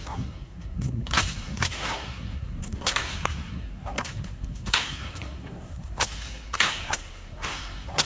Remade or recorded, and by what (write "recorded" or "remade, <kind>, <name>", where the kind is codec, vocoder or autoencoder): remade, codec, SNAC